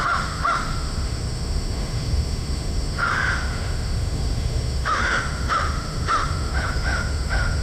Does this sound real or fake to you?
fake